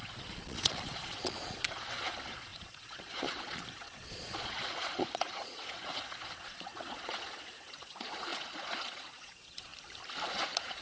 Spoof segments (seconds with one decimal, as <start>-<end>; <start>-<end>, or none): 0.0-9.7; 10.3-10.8